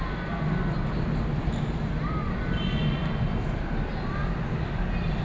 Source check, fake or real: real